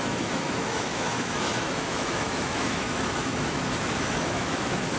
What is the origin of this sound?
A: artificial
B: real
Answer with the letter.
A